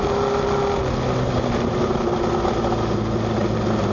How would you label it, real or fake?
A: real